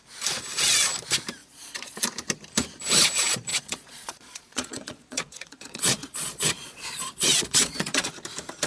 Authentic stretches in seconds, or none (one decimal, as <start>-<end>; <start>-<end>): 0.0-1.4; 2.0-3.5; 8.1-8.7